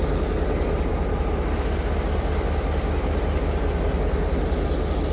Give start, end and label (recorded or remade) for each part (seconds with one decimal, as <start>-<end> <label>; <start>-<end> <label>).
0.0-5.1 recorded